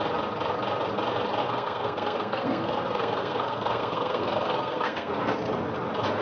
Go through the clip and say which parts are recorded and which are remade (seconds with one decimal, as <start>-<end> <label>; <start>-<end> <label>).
0.0-1.4 recorded; 1.4-5.1 remade; 5.1-6.2 recorded